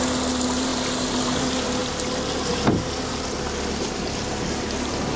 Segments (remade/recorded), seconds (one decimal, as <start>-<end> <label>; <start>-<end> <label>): 0.0-5.2 recorded